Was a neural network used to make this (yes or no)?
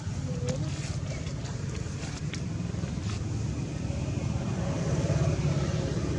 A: yes